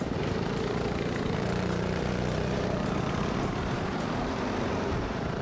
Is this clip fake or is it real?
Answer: fake